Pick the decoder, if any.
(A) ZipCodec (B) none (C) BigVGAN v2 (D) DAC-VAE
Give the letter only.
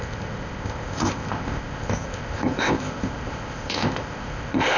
A